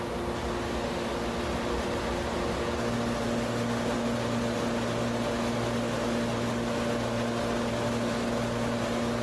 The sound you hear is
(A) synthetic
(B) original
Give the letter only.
B